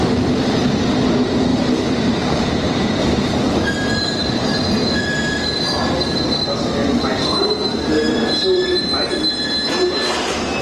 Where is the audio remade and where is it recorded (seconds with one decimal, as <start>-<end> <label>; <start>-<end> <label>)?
0.0-1.5 recorded; 1.5-3.9 remade; 3.9-10.6 recorded